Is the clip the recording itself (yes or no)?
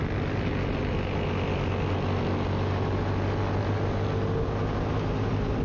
yes